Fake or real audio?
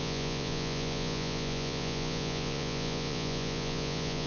fake